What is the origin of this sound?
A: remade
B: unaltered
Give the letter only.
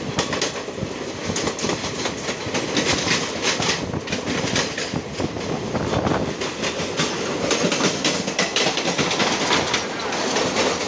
B